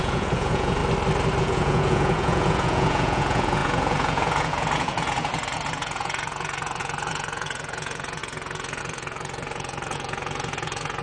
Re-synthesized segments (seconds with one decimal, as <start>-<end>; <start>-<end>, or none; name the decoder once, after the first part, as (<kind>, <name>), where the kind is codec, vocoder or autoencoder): 0.0-0.8 (vocoder, Vocos); 1.4-11.0